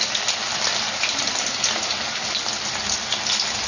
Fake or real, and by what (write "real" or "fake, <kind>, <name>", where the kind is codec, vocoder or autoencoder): real